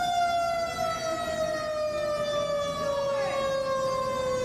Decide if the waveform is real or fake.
real